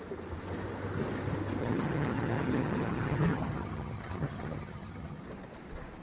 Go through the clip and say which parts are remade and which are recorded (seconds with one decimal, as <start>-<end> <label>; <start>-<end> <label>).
0.0-1.6 recorded; 1.6-5.2 remade; 5.2-6.0 recorded